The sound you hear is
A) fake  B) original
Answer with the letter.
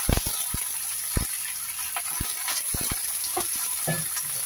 B